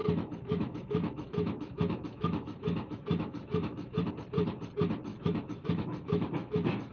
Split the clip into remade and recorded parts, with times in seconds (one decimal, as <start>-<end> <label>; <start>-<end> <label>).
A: 0.0-4.1 remade; 4.1-5.1 recorded; 5.1-6.9 remade